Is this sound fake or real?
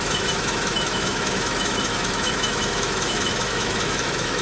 fake